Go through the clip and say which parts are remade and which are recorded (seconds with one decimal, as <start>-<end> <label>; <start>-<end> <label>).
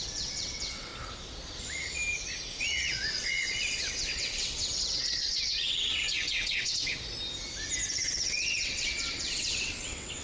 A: 0.0-0.9 remade; 0.9-1.6 recorded; 1.6-2.0 remade; 2.0-2.6 recorded; 2.6-6.9 remade; 6.9-7.9 recorded; 7.9-10.2 remade